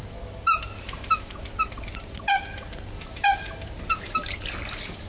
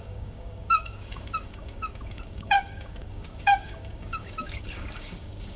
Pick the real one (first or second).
first